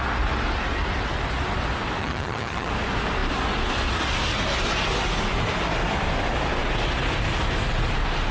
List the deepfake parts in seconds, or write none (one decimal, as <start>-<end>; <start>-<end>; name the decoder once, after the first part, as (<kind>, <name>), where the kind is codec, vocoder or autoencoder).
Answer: 2.0-2.7 (vocoder, HiFi-GAN)